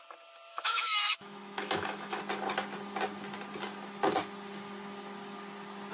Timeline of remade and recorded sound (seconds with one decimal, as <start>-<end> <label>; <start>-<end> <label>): 0.0-0.5 recorded; 0.5-2.2 remade; 2.2-5.9 recorded